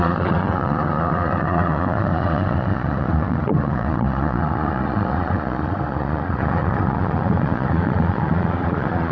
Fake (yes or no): yes